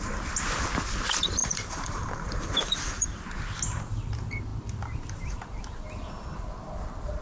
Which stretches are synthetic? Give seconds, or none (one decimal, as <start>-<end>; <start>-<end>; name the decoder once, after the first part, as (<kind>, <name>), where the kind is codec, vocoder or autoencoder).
1.4-3.2 (vocoder, BigVGAN v2)

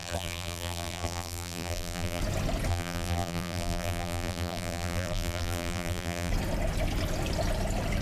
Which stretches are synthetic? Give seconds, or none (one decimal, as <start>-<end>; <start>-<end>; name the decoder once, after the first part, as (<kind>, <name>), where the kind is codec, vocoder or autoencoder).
0.0-2.2 (vocoder, BigVGAN v2); 2.7-6.3

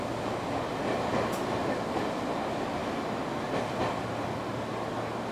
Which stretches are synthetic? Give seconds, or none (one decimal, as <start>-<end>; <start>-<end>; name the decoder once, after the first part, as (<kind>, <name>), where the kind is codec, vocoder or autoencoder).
none

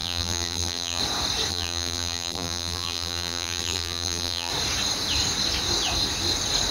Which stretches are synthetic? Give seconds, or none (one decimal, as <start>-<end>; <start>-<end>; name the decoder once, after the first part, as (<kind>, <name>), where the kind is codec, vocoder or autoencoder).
0.0-1.0 (vocoder, BigVGAN v2); 1.5-4.5

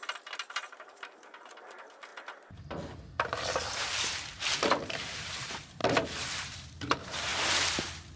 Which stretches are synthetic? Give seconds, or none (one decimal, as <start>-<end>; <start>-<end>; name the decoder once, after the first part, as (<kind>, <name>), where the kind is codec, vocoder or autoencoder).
0.0-2.1 (vocoder, BigVGAN v2); 3.9-5.8; 6.3-7.3